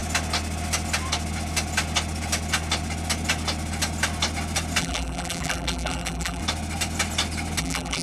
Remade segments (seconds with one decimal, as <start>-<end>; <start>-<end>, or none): 4.8-6.4; 7.6-8.0